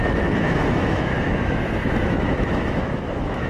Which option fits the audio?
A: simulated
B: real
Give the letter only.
A